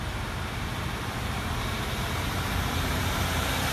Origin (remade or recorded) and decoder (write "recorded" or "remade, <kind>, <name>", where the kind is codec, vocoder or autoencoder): remade, vocoder, BigVGAN v2